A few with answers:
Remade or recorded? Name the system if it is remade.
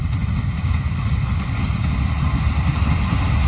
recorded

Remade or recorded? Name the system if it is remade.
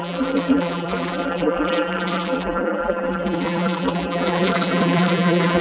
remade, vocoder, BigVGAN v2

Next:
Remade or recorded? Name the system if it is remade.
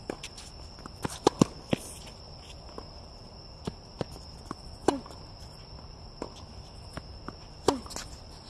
recorded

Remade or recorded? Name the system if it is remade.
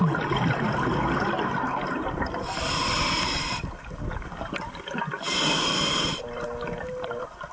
recorded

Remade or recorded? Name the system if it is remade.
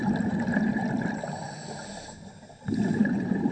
recorded